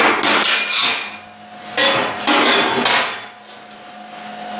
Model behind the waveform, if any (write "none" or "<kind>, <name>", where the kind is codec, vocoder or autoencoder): none